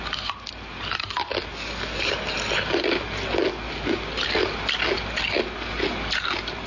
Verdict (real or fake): real